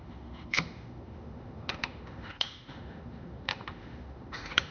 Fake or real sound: fake